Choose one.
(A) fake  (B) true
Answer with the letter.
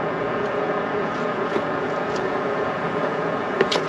A